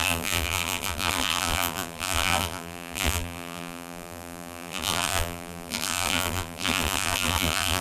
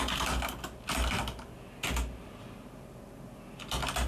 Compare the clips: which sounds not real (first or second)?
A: first